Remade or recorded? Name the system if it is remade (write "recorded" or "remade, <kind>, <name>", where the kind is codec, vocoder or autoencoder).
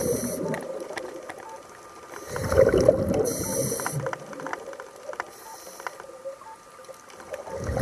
recorded